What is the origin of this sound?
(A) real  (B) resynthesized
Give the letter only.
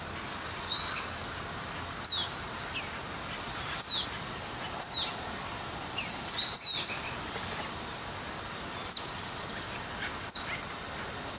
A